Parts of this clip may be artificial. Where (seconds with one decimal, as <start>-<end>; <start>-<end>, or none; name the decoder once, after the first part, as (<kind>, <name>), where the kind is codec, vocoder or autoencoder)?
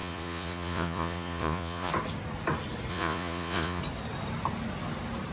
0.0-1.9 (vocoder, Vocos); 2.9-3.8